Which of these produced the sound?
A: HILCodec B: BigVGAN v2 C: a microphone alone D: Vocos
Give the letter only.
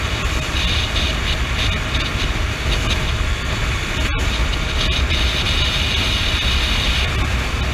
C